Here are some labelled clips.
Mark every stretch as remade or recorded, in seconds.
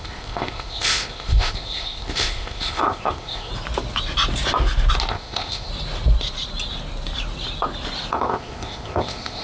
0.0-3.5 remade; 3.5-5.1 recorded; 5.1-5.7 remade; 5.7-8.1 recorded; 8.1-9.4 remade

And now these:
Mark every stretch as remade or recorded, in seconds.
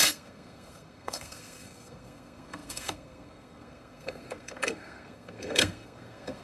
0.0-6.4 remade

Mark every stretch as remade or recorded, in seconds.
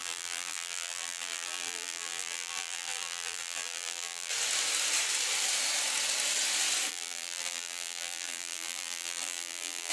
0.0-4.3 remade; 4.3-6.9 recorded; 6.9-9.9 remade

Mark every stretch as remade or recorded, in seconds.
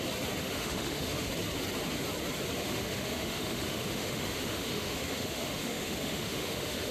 0.0-0.4 recorded; 0.4-1.3 remade; 1.3-2.6 recorded; 2.6-6.9 remade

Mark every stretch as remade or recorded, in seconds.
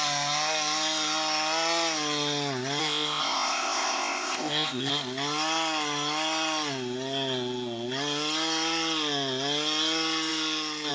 0.0-2.8 recorded; 2.8-4.9 remade; 4.9-10.9 recorded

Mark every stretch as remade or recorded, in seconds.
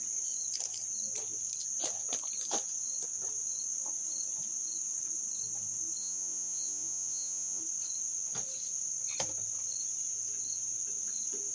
0.0-6.0 recorded; 6.0-7.6 remade; 7.6-11.5 recorded